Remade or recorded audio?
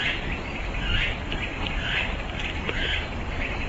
recorded